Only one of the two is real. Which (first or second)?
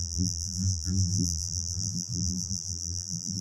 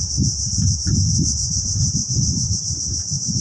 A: second